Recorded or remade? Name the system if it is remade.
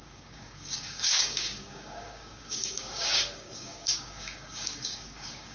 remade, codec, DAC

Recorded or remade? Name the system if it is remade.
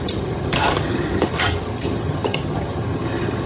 remade, vocoder, HiFi-GAN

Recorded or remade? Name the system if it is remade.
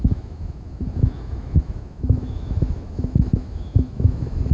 remade, autoencoder, DAC-VAE